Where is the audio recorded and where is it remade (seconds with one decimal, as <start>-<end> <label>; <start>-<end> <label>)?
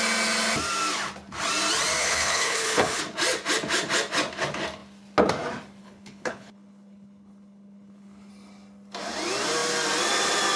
0.0-2.0 recorded; 2.0-3.0 remade; 3.0-5.8 recorded; 5.8-8.3 remade; 8.3-10.6 recorded